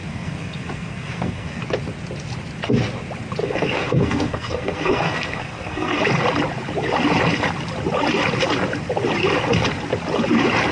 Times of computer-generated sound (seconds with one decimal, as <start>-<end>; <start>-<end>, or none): 0.0-1.6; 3.4-6.0